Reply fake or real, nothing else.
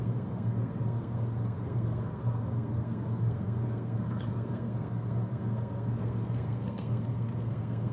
fake